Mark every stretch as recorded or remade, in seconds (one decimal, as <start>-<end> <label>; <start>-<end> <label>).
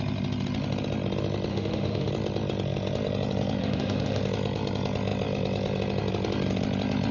0.0-1.5 recorded; 1.5-2.1 remade; 2.1-3.6 recorded; 3.6-4.2 remade; 4.2-7.1 recorded